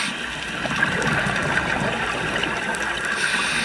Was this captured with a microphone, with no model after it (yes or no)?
yes